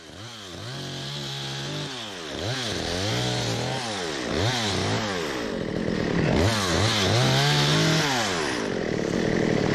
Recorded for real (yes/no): yes